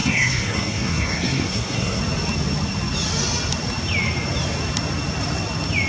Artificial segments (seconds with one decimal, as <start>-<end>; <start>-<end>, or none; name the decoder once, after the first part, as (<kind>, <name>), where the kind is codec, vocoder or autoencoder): 0.0-2.0 (codec, SNAC)